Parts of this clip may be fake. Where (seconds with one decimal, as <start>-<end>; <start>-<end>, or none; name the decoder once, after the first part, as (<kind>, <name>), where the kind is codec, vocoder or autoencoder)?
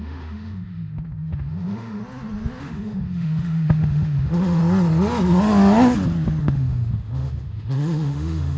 0.0-2.0 (autoencoder, DAC-VAE); 2.6-4.6; 6.4-8.6